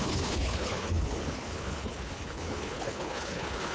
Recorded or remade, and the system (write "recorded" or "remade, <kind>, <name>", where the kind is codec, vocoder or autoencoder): remade, codec, HILCodec